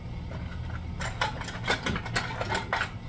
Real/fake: real